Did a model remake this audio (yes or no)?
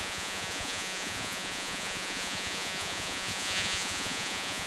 yes